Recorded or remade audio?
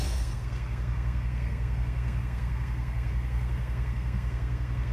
remade